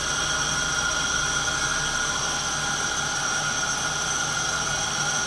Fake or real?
real